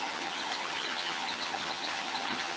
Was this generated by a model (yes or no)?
yes